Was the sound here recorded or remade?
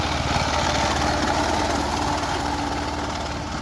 recorded